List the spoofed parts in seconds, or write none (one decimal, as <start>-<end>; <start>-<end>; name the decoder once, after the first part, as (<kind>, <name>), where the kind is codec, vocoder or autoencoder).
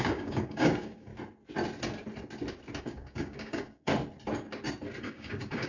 0.0-1.1 (codec, DAC); 2.8-3.9; 5.0-5.7